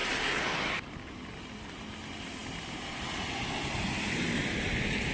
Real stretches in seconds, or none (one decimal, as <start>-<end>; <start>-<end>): 0.0-5.1